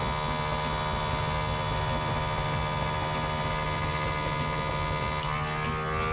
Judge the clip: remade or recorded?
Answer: recorded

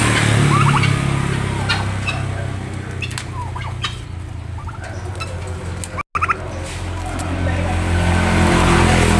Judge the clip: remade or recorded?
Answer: recorded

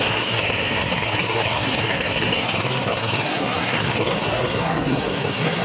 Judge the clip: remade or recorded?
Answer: remade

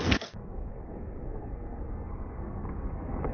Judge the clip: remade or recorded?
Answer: remade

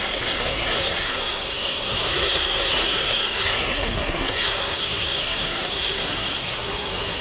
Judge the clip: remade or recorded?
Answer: remade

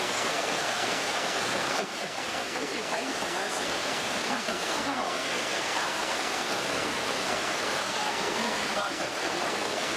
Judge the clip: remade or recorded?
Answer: remade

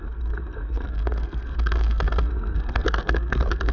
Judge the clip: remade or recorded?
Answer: remade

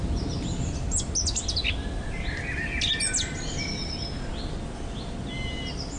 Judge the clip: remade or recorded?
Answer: recorded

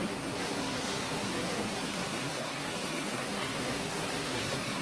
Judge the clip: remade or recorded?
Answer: remade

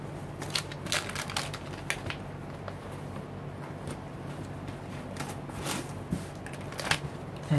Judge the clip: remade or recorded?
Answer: recorded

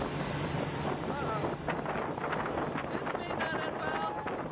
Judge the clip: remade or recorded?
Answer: recorded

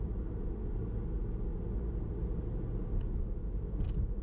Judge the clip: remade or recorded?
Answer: recorded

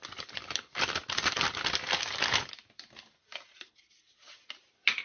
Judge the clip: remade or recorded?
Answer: recorded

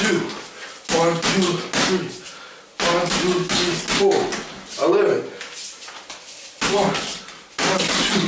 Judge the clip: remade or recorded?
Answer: recorded